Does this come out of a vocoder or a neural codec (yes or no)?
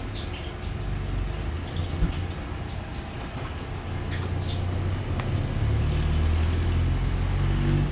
no